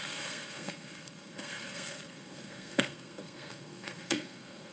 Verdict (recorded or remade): remade